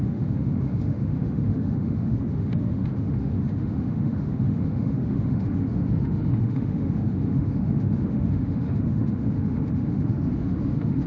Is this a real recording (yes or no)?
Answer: no